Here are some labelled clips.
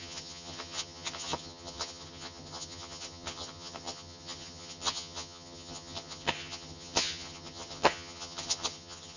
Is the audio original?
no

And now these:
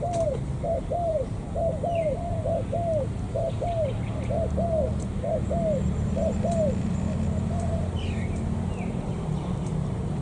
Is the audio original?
no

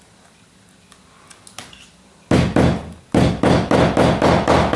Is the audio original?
yes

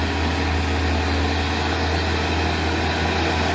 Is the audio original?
yes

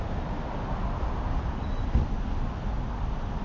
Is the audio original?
yes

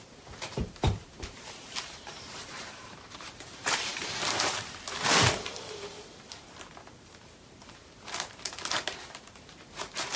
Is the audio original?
no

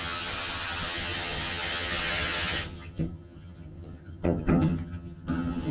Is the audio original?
no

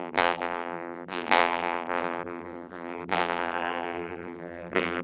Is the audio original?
no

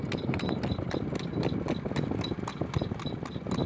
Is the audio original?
yes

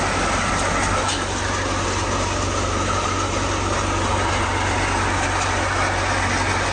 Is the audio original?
yes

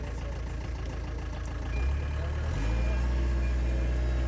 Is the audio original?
yes